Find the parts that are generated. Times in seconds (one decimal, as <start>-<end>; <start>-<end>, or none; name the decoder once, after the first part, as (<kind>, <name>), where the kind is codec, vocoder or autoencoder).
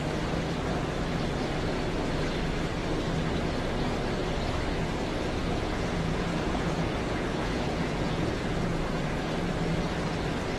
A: 5.4-9.2 (vocoder, Vocos)